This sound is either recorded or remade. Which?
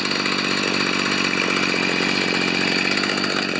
recorded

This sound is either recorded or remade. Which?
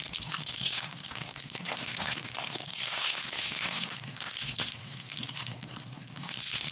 remade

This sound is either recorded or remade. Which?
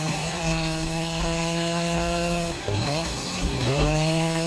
remade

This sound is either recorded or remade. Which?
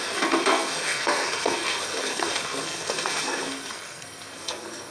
remade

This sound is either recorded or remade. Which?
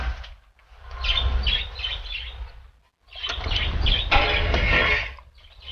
recorded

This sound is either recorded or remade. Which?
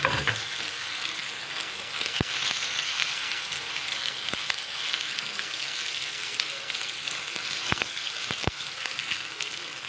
remade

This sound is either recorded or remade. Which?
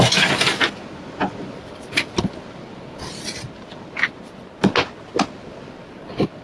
recorded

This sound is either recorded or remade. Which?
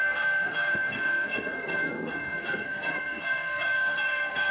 remade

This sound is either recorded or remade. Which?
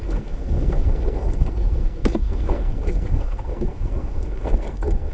remade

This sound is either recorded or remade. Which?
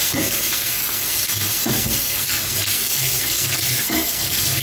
remade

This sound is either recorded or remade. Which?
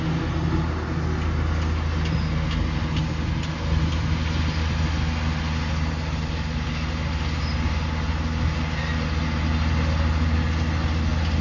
recorded